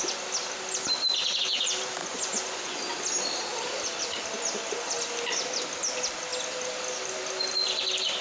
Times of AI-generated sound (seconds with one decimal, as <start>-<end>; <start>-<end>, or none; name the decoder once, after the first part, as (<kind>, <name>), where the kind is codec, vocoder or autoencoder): 2.0-2.8 (vocoder, Vocos)

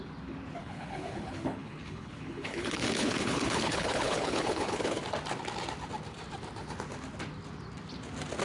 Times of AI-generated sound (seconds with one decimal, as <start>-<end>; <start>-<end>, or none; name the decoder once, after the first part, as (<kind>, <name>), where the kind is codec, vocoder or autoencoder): 0.6-5.0 (codec, HILCodec)

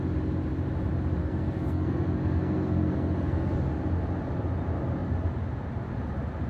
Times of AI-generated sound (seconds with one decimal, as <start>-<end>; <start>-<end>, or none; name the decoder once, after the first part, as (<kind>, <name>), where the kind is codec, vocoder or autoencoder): 1.2-3.6 (codec, SNAC)

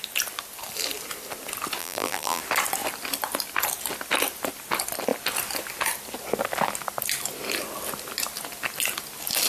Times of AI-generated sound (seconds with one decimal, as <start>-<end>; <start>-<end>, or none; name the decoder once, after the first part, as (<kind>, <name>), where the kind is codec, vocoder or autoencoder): 1.8-2.4 (vocoder, BigVGAN v2)

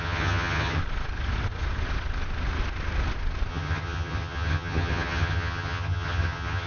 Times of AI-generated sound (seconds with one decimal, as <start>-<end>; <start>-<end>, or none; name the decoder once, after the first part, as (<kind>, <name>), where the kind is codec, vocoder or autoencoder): 0.0-0.8 (vocoder, HiFi-GAN); 3.5-6.7

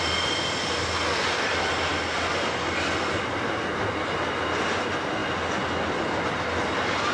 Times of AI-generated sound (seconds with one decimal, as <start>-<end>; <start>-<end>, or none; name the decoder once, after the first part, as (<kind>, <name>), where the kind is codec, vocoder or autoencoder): none

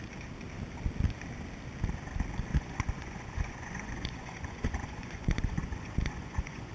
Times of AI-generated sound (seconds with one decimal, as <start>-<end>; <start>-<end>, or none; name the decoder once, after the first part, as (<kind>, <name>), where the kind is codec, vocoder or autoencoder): 2.5-6.7 (vocoder, Vocos)

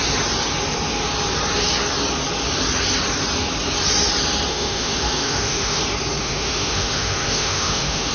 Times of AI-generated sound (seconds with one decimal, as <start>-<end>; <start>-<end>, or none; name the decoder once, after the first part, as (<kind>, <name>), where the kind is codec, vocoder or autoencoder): 4.5-5.8 (autoencoder, DAC-VAE); 6.2-8.1